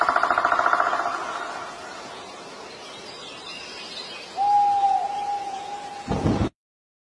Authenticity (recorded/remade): recorded